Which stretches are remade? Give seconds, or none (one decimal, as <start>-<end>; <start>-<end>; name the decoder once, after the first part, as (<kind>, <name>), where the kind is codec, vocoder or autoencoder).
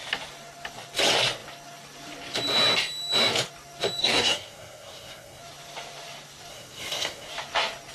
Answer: 4.0-5.4 (codec, SNAC); 6.5-7.3